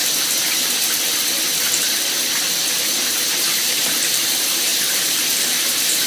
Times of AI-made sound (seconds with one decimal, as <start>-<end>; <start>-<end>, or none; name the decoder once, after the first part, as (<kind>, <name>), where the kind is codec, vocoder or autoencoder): 2.8-6.1 (vocoder, BigVGAN v2)